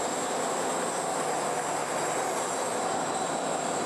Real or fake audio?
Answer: real